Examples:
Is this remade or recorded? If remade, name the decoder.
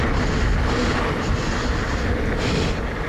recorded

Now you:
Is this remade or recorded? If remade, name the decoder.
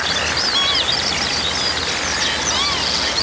recorded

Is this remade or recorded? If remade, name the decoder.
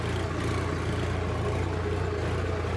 recorded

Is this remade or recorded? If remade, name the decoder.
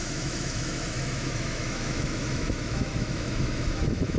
remade, autoencoder, DAC-VAE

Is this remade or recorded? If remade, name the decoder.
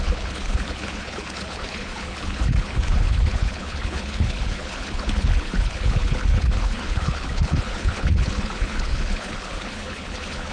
remade, codec, HILCodec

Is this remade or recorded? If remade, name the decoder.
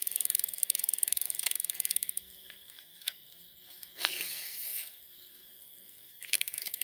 remade, codec, SNAC